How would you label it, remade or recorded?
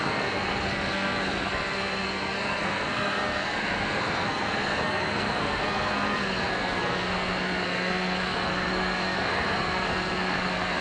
remade